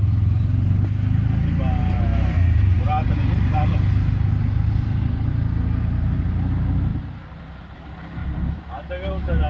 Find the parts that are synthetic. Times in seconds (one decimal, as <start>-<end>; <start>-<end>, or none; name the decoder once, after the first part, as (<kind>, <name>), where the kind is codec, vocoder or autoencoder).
6.9-7.8 (vocoder, BigVGAN v2); 8.2-8.7